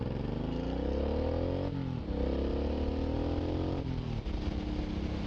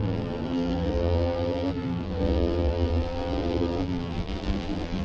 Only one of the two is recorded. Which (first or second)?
first